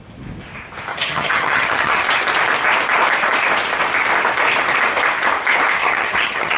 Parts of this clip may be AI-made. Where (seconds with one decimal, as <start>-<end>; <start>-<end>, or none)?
0.9-2.1; 5.8-6.6